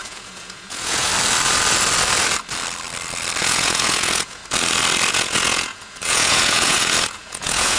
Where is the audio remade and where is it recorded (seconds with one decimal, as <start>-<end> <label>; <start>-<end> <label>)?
0.0-1.1 remade; 1.1-3.4 recorded; 3.4-4.4 remade; 4.4-5.1 recorded; 5.1-7.8 remade